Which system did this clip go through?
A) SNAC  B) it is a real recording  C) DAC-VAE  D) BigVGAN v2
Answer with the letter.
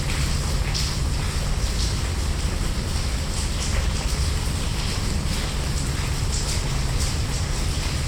B